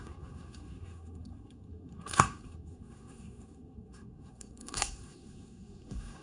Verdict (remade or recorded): remade